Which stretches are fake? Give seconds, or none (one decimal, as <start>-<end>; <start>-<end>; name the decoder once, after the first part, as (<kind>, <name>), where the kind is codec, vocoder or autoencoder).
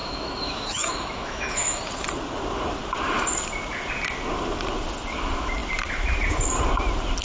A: 0.0-1.8 (autoencoder, DAC-VAE)